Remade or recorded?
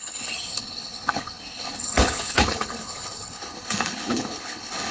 remade